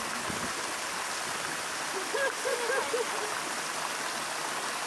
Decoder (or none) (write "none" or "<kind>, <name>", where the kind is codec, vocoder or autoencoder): none